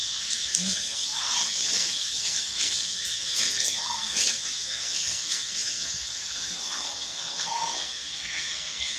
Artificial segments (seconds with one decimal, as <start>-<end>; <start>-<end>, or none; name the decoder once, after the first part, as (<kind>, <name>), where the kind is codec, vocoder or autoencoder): 0.0-9.0 (codec, SNAC)